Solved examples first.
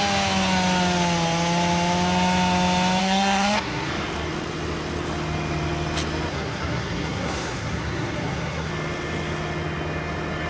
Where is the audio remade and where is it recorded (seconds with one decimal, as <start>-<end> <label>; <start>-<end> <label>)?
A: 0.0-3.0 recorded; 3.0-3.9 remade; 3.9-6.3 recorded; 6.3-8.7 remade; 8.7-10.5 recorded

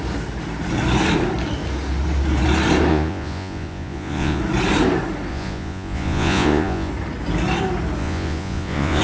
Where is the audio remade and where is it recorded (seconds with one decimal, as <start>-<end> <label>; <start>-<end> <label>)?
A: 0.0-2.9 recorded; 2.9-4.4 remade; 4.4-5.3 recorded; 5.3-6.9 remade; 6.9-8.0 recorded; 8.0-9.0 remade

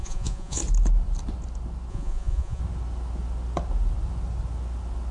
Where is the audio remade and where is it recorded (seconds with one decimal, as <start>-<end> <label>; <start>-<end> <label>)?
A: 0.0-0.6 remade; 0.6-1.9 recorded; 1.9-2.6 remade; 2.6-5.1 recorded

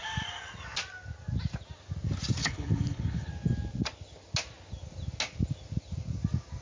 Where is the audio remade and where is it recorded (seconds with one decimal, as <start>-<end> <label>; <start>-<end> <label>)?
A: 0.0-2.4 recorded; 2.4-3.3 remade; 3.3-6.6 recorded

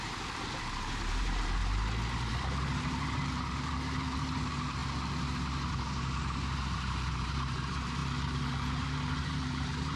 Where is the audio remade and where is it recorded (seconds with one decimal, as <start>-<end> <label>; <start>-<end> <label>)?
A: 0.0-1.6 remade; 1.6-2.3 recorded; 2.3-4.8 remade; 4.8-5.7 recorded; 5.7-8.0 remade; 8.0-8.7 recorded; 8.7-10.0 remade

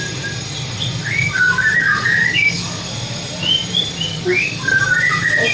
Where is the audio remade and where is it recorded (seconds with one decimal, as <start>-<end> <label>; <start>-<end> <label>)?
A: 0.0-1.0 recorded; 1.0-2.9 remade; 2.9-4.1 recorded; 4.1-5.0 remade; 5.0-5.5 recorded

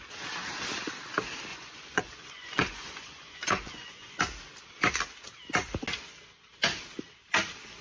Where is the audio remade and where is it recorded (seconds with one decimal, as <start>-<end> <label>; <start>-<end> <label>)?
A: 0.0-1.5 recorded; 1.5-4.2 remade; 4.2-7.8 recorded